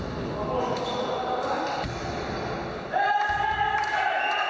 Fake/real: real